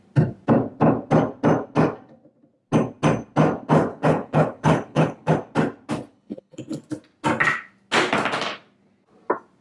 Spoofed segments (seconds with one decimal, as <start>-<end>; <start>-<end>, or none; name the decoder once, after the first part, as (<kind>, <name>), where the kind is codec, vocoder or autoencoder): 3.9-5.3 (codec, HILCodec); 6.1-6.8